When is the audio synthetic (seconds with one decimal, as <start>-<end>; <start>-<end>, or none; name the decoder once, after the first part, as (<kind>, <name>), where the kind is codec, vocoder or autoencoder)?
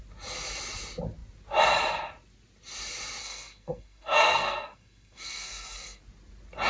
3.2-6.0 (codec, SNAC)